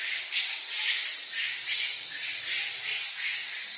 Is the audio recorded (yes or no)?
yes